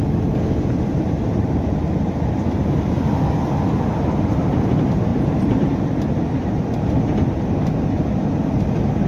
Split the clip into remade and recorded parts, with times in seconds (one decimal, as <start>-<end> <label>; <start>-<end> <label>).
0.0-5.1 recorded; 5.1-5.8 remade; 5.8-9.1 recorded